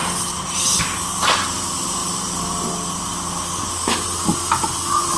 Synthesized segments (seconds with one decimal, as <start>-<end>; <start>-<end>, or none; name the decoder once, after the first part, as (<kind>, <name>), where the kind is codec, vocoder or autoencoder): none